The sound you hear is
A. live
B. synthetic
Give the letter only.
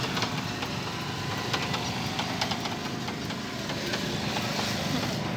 A